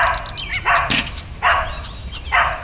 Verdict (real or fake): real